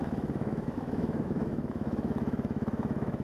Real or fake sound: fake